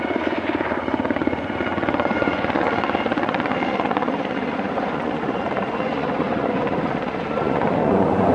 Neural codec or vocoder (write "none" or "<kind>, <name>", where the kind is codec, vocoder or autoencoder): vocoder, Vocos